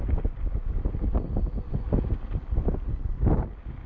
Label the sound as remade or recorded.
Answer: recorded